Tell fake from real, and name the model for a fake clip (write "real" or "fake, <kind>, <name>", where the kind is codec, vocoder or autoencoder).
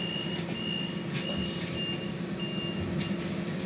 real